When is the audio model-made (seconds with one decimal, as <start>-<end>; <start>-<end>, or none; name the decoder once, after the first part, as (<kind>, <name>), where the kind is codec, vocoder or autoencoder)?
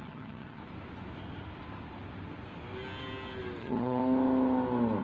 0.0-0.6 (vocoder, HiFi-GAN); 3.6-4.0